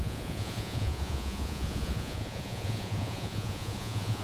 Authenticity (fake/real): fake